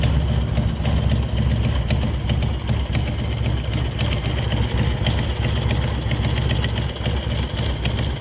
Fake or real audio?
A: real